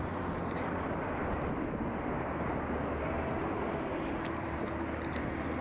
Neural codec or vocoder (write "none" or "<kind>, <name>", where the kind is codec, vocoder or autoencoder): none